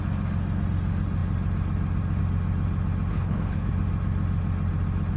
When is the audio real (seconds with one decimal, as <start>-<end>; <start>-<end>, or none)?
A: 0.0-3.1; 3.7-5.2